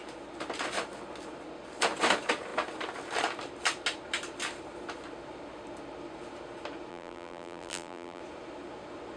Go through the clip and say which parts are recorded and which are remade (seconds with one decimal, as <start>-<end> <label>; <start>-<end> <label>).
0.0-6.9 recorded; 6.9-8.2 remade; 8.2-9.2 recorded